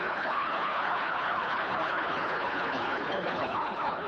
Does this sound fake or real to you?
fake